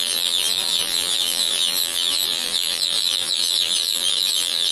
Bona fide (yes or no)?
no